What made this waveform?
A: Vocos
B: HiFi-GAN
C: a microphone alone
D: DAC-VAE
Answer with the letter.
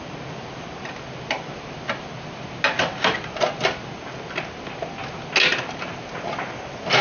C